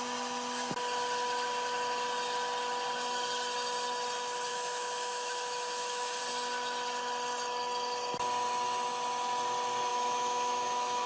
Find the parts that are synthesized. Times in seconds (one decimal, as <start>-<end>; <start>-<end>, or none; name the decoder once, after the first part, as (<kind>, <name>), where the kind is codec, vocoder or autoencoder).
4.5-6.2 (autoencoder, DAC-VAE); 9.9-11.1